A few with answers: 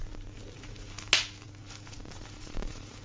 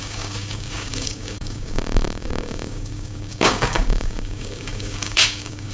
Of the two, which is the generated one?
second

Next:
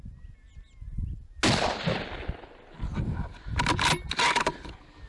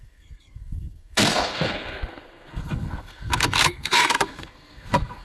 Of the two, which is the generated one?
second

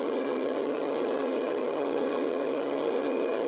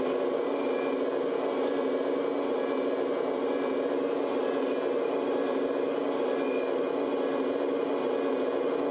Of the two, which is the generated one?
first